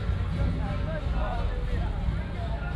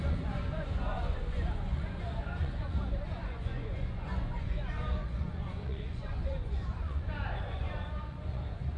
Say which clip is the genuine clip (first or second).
first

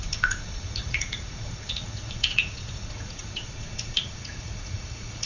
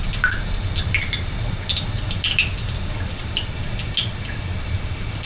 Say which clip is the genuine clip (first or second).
second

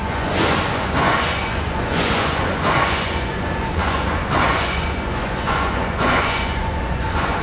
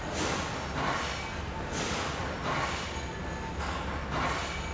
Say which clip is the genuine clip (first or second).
second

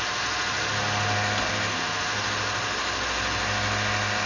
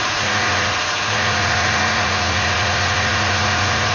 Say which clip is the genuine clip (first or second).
first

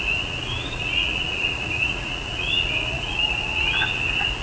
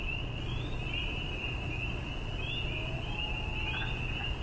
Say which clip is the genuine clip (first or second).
second